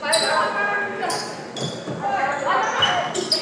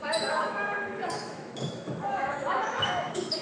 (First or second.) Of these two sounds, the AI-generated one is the second